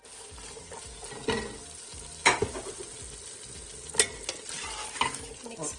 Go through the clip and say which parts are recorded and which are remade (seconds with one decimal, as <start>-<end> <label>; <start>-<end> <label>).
0.0-4.8 recorded; 4.8-5.3 remade; 5.3-5.8 recorded

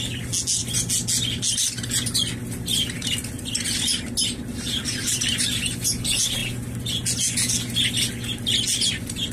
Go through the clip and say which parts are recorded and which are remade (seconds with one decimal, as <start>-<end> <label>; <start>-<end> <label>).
0.0-9.3 recorded